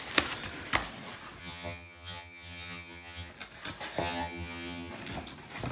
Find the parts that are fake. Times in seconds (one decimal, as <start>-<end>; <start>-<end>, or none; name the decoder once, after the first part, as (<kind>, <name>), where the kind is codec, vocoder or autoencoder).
1.4-3.3 (vocoder, HiFi-GAN); 4.0-4.9